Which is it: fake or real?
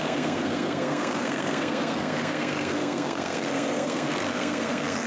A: fake